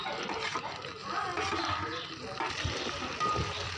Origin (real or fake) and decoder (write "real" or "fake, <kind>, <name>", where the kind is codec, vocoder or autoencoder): real